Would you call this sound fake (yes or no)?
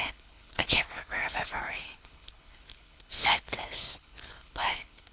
yes